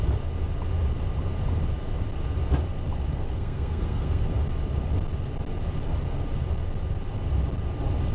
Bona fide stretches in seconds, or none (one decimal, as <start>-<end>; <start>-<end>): 0.0-3.1; 4.3-8.1